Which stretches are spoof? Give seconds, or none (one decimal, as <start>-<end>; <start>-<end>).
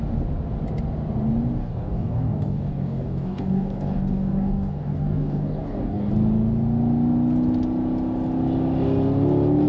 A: 1.6-6.1